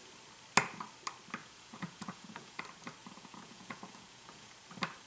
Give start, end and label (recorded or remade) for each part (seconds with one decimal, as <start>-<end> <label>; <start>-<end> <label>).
0.0-1.4 recorded; 1.4-2.6 remade; 2.6-3.0 recorded; 3.0-4.5 remade; 4.5-5.1 recorded